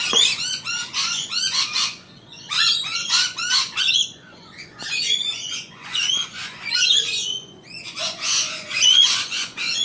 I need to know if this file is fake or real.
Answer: fake